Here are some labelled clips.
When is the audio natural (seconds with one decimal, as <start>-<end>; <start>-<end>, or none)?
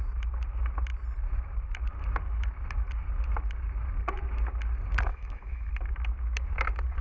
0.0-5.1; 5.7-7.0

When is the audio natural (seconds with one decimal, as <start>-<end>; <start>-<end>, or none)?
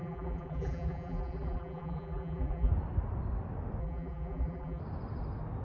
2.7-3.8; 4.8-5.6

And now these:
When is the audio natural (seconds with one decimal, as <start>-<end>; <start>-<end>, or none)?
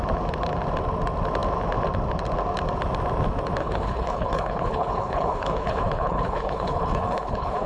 0.0-3.6